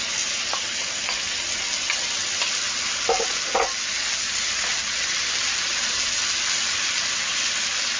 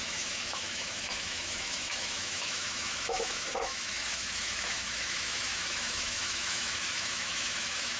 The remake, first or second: second